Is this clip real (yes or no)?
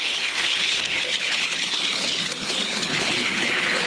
no